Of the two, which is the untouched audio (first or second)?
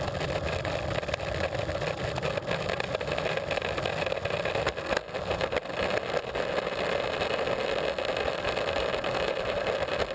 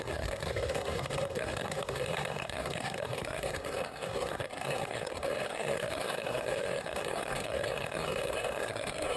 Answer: first